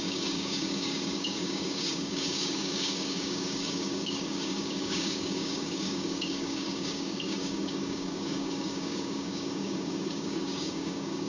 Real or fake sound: fake